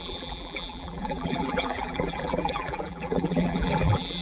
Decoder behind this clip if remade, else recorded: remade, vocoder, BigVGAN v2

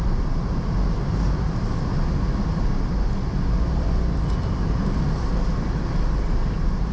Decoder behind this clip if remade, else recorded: recorded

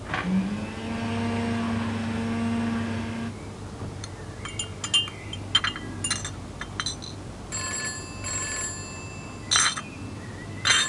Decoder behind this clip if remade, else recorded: recorded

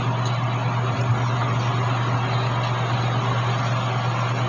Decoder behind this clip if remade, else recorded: recorded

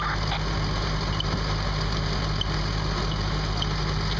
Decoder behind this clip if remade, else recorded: recorded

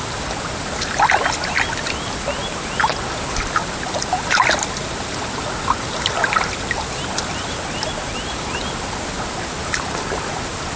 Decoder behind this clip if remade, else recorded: recorded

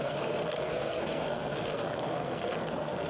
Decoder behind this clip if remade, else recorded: remade, codec, SNAC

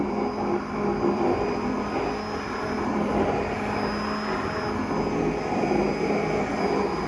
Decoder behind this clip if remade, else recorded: recorded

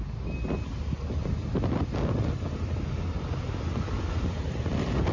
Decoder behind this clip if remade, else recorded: recorded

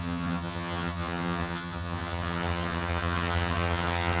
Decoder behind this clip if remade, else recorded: remade, vocoder, HiFi-GAN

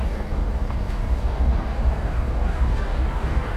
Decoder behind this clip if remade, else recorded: remade, codec, DAC